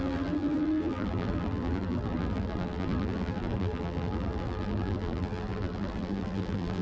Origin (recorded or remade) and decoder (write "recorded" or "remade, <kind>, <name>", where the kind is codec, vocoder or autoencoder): remade, vocoder, BigVGAN v2